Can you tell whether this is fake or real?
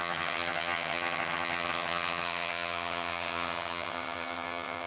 fake